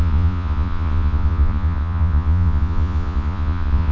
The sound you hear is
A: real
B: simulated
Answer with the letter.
B